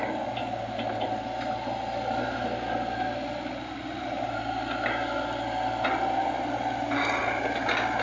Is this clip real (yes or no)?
yes